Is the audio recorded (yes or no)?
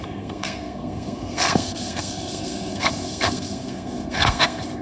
no